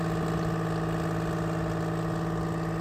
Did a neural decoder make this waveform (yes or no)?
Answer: no